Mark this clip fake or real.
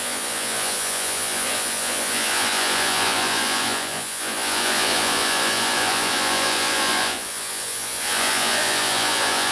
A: fake